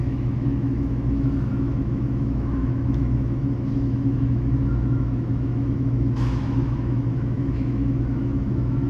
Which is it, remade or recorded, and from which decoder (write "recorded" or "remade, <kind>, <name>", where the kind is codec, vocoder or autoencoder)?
remade, autoencoder, DAC-VAE